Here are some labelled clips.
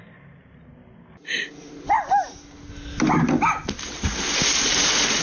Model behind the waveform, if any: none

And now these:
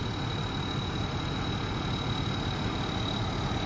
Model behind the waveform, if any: none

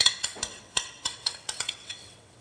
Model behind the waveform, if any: vocoder, WaveNeXt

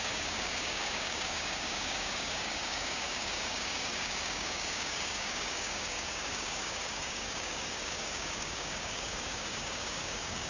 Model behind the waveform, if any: codec, DAC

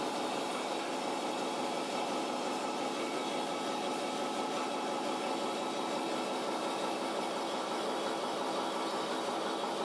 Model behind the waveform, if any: vocoder, BigVGAN v2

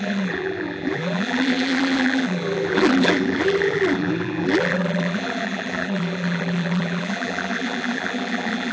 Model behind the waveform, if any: vocoder, BigVGAN v2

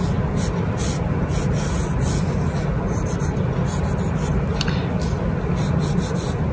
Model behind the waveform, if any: none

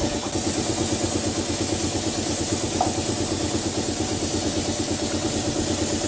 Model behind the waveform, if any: none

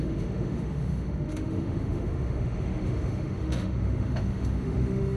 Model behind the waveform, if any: autoencoder, DAC-VAE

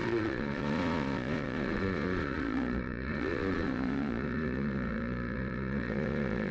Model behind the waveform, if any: vocoder, Vocos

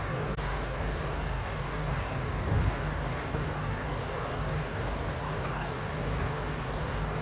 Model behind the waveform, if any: codec, DAC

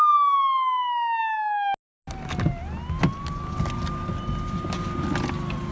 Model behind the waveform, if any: none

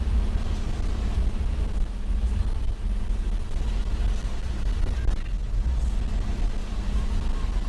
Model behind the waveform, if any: none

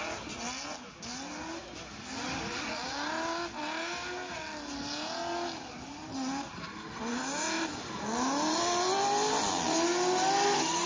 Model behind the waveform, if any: none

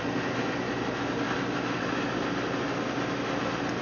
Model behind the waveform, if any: none